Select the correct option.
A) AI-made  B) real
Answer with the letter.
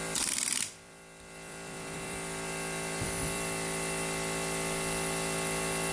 A